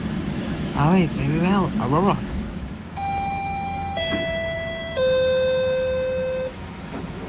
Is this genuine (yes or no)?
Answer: no